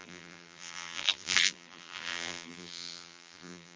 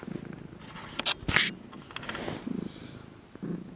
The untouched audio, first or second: second